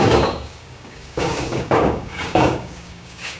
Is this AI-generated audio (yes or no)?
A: yes